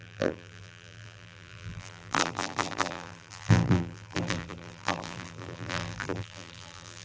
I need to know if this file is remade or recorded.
remade